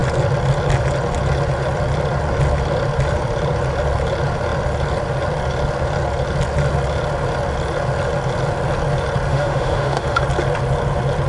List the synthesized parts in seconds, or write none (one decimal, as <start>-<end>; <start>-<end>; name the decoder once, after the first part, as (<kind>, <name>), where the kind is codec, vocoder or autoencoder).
9.3-10.2 (autoencoder, DAC-VAE)